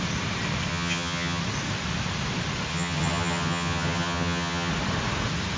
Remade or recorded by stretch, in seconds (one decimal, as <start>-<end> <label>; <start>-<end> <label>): 0.0-0.7 recorded; 0.7-1.4 remade; 1.4-2.7 recorded; 2.7-4.7 remade; 4.7-5.6 recorded